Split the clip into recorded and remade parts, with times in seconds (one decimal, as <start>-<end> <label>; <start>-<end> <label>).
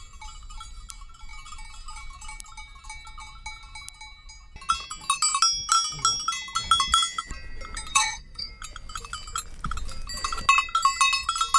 0.0-7.9 recorded; 7.9-8.5 remade; 8.5-11.6 recorded